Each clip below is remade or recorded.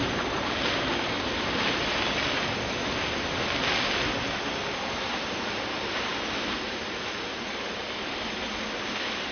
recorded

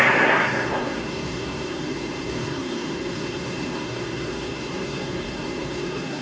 remade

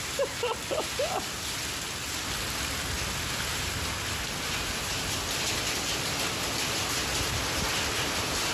recorded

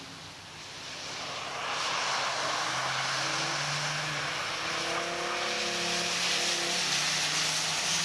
recorded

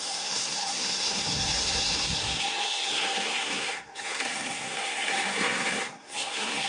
remade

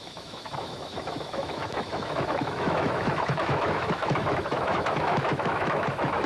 remade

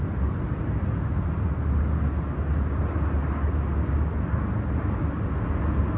recorded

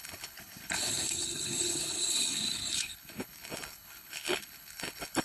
remade